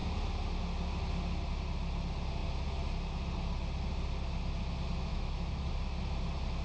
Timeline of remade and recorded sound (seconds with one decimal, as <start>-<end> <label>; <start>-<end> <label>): 0.0-5.1 recorded; 5.1-5.7 remade; 5.7-6.6 recorded